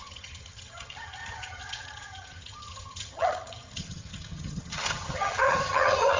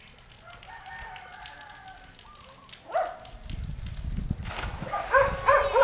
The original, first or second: second